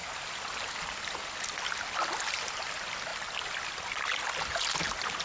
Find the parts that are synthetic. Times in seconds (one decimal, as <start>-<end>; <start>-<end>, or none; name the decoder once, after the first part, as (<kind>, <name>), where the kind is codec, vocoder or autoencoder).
none